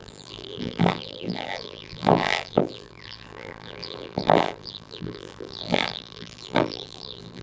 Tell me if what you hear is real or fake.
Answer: fake